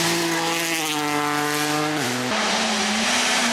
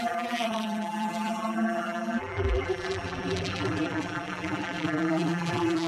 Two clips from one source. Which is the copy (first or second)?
second